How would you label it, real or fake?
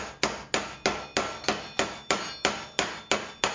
real